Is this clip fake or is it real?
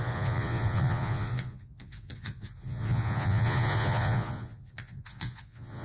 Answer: fake